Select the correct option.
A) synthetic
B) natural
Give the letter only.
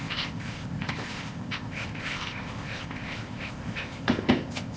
A